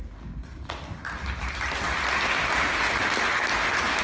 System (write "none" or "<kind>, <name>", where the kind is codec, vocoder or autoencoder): none